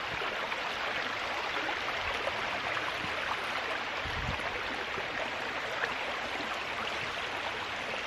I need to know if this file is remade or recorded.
recorded